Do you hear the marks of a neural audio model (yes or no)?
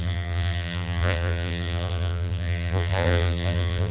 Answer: yes